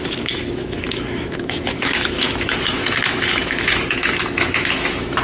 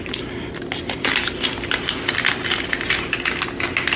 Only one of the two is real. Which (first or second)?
second